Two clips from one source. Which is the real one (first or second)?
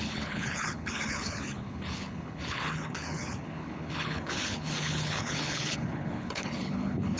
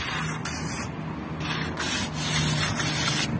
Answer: second